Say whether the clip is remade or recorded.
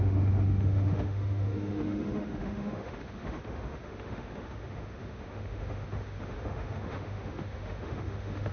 remade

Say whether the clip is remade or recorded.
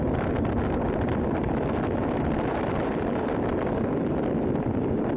remade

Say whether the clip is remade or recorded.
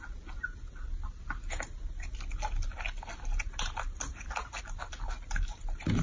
recorded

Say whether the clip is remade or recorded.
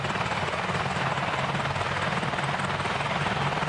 recorded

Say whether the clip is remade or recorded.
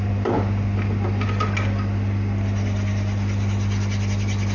recorded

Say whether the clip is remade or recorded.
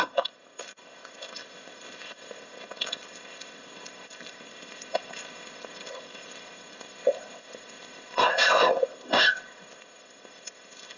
remade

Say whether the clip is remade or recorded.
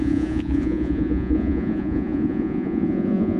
remade